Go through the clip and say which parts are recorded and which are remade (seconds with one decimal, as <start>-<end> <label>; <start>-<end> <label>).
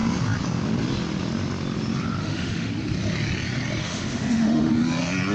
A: 0.0-2.2 recorded; 2.2-2.7 remade; 2.7-3.8 recorded; 3.8-4.7 remade; 4.7-5.3 recorded